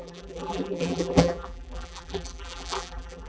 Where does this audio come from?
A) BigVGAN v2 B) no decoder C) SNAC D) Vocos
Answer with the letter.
A